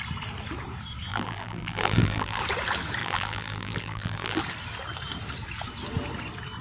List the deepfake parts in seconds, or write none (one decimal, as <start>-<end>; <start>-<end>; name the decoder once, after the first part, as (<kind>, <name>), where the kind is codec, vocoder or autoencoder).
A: 1.1-2.4 (vocoder, BigVGAN v2); 3.0-4.4